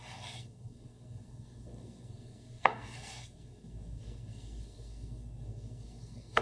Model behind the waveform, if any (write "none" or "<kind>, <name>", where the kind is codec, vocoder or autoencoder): codec, SNAC